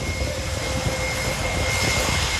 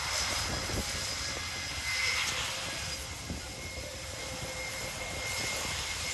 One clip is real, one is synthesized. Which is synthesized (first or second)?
second